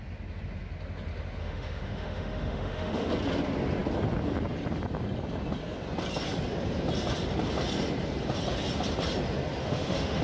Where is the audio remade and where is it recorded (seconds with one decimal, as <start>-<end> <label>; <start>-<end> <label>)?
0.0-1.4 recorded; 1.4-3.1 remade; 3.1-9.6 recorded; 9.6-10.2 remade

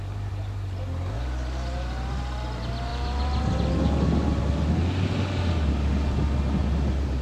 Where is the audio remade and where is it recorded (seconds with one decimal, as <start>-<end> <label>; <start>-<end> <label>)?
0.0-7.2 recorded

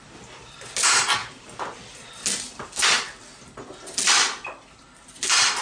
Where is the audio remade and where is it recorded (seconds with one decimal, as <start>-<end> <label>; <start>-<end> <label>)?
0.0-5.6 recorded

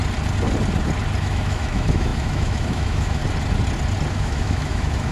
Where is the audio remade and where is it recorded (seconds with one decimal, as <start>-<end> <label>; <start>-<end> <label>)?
0.0-1.2 recorded; 1.2-3.2 remade; 3.2-4.1 recorded; 4.1-5.1 remade

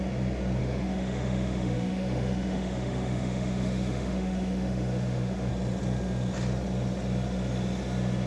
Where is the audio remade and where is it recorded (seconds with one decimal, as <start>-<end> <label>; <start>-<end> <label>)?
0.0-0.6 recorded; 0.6-5.5 remade; 5.5-8.3 recorded

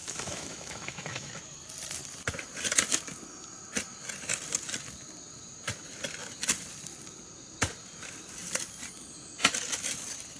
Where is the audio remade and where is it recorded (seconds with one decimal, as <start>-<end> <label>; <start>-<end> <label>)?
0.0-1.3 remade; 1.3-10.4 recorded

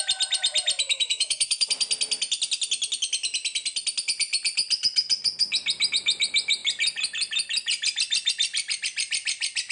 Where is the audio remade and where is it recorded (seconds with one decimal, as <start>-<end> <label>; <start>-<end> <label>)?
0.0-0.9 recorded; 0.9-1.7 remade; 1.7-9.7 recorded